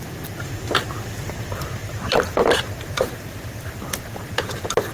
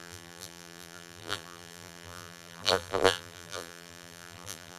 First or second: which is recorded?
first